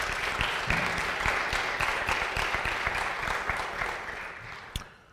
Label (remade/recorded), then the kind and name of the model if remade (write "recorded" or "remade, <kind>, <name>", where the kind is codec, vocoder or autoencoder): recorded